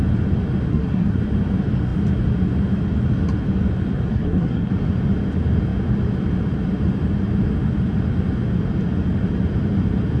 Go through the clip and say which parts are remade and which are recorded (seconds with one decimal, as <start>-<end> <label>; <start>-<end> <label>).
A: 0.0-0.7 recorded; 0.7-1.2 remade; 1.2-4.1 recorded; 4.1-4.7 remade; 4.7-10.2 recorded